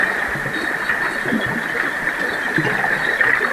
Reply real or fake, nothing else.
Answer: real